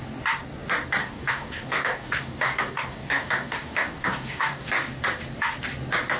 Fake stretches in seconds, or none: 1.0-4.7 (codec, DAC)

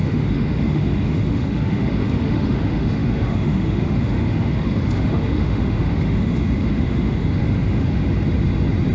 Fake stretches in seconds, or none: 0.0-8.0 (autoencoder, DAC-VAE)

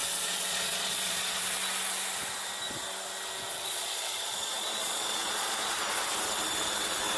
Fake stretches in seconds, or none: 0.0-1.4 (vocoder, Vocos); 3.5-5.9

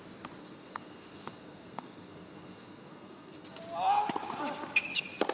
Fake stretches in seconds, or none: 0.4-3.6 (codec, SNAC)